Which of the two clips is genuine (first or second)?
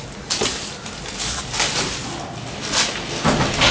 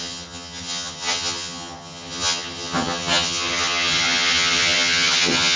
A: first